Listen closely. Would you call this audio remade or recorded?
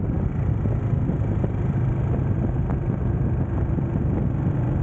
recorded